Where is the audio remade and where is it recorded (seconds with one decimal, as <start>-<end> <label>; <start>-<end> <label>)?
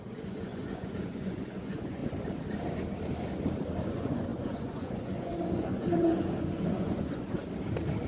0.0-2.0 remade; 2.0-3.9 recorded; 3.9-7.4 remade; 7.4-8.1 recorded